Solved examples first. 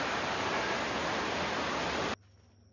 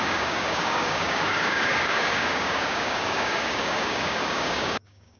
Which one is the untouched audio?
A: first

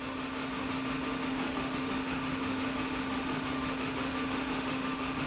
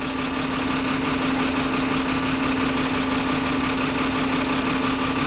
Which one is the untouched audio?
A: second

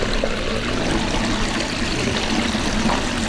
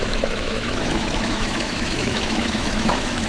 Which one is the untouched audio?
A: first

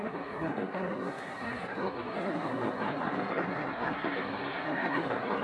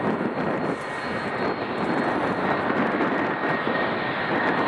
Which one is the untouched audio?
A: second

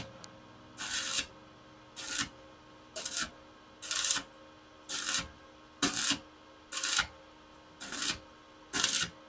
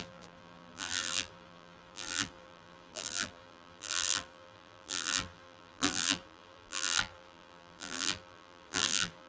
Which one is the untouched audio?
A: first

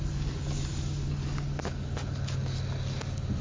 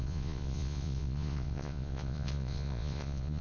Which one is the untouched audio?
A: first